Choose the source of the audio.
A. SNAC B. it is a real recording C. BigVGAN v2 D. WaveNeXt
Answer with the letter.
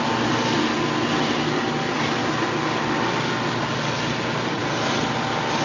B